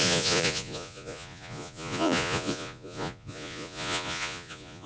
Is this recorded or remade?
remade